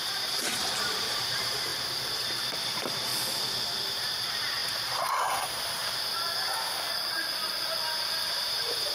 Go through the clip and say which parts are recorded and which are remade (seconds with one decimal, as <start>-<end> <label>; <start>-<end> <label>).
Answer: 0.0-3.1 remade; 3.1-3.9 recorded; 3.9-5.8 remade; 5.8-8.3 recorded; 8.3-8.9 remade